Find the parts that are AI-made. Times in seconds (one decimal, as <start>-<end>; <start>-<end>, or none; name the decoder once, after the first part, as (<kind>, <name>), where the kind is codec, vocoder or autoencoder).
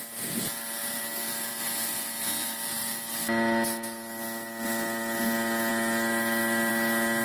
none